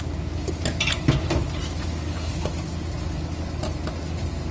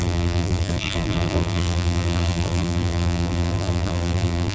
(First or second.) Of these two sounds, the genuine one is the first